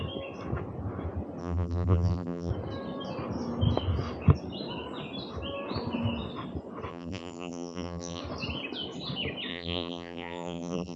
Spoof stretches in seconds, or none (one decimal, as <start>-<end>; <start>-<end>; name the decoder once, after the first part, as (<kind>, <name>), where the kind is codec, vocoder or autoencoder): 1.4-2.5 (vocoder, BigVGAN v2); 6.9-8.2; 9.5-11.0